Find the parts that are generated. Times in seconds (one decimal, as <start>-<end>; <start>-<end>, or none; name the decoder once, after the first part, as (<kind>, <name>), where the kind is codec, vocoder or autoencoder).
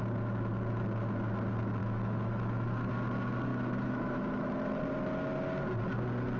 1.8-2.9 (autoencoder, DAC-VAE); 3.5-4.8